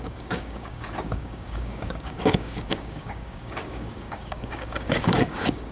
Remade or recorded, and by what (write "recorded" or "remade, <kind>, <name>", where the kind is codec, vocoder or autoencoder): remade, codec, DAC